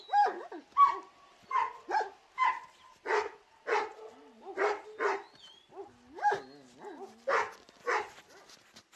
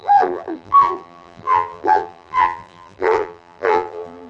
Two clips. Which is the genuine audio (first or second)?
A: first